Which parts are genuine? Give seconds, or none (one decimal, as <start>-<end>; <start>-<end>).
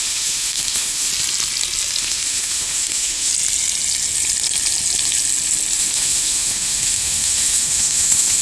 1.1-2.0; 3.3-5.8